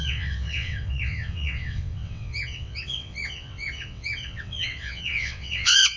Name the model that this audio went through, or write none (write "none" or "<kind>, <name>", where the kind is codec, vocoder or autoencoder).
vocoder, WaveNeXt